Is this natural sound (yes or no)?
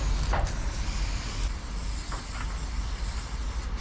yes